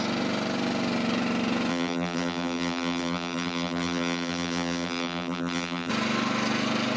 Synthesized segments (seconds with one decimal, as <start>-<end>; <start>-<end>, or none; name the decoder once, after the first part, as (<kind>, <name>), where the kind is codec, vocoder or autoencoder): 1.7-5.9 (vocoder, BigVGAN v2)